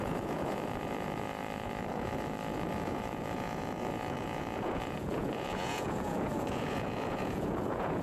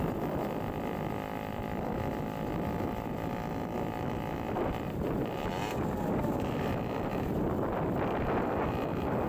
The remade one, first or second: first